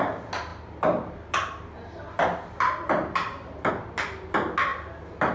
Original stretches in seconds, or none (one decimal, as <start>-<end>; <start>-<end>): 0.0-5.3